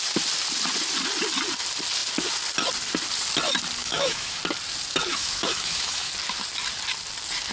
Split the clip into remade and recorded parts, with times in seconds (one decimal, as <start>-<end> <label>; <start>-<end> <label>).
0.0-3.8 recorded; 3.8-4.4 remade; 4.4-5.1 recorded; 5.1-6.1 remade; 6.1-7.5 recorded